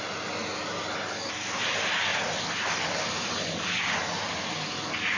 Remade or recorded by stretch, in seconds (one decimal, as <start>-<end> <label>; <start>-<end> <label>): 0.0-5.2 recorded